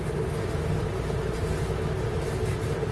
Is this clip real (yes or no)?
yes